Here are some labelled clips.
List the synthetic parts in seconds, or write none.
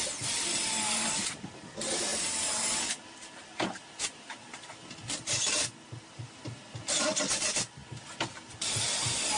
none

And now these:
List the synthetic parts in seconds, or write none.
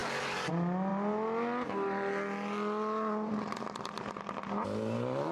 0.0-0.5 (codec, DAC)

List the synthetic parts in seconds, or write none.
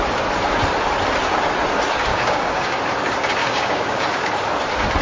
2.1-2.8 (codec, DAC); 3.4-4.3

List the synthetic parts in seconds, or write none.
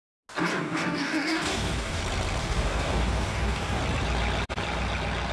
0.5-2.0 (codec, DAC); 2.4-3.8